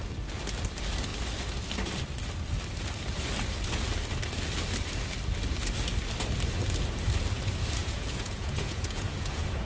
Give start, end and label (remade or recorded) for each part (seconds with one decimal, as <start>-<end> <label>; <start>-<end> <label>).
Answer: 0.0-7.8 recorded; 7.8-9.7 remade

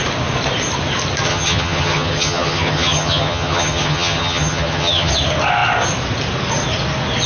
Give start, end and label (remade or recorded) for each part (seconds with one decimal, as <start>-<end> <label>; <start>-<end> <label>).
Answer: 0.0-1.3 recorded; 1.3-5.1 remade; 5.1-7.3 recorded